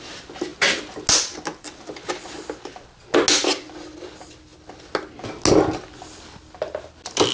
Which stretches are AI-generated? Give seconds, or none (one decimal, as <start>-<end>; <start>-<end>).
none